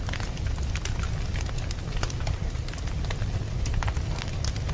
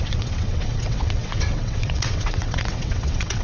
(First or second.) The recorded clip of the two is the first